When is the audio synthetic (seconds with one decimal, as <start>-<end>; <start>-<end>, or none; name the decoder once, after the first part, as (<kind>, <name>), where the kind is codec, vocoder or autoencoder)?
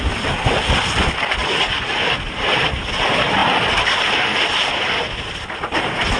1.4-2.2 (vocoder, BigVGAN v2)